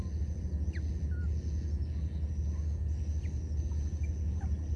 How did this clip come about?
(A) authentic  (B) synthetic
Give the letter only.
A